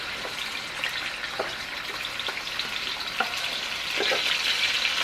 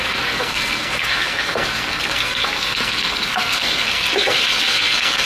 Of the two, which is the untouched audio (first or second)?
first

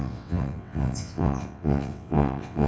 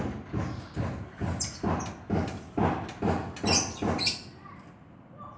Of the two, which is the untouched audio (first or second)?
second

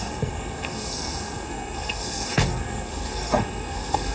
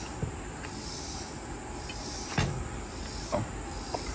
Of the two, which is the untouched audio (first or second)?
second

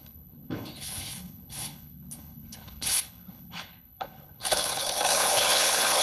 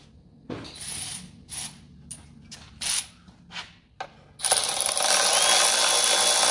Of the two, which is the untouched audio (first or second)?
second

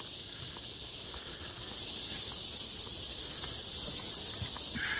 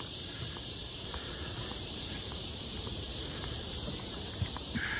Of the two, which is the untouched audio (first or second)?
first